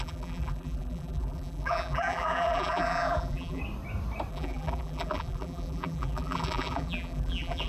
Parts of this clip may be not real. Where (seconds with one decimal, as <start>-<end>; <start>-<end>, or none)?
0.0-3.6; 4.3-7.7